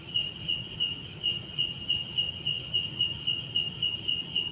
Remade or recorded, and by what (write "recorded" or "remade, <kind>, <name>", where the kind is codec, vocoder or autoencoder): remade, vocoder, Vocos